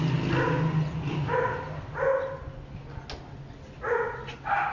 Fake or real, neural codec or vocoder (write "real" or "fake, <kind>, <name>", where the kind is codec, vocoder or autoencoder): real